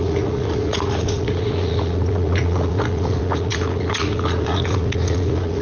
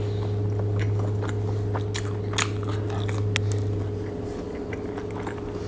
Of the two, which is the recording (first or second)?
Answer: second